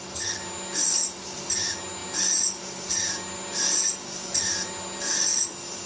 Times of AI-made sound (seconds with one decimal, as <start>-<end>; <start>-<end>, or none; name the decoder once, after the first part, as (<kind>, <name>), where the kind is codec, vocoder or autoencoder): none